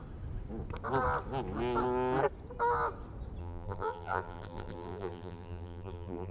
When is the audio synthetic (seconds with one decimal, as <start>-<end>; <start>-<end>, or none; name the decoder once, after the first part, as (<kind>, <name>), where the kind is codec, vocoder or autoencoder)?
3.4-6.3 (vocoder, BigVGAN v2)